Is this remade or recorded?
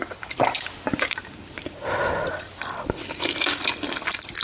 remade